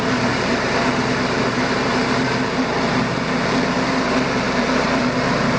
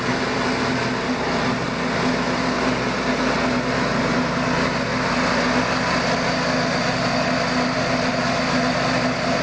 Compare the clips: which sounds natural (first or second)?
second